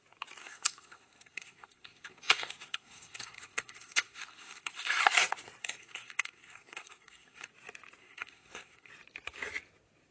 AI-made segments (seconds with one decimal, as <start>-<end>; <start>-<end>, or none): 0.4-5.0; 5.6-7.5; 8.0-8.9